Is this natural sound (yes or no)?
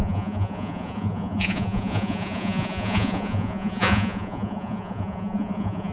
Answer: no